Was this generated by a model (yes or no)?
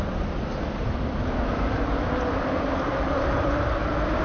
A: yes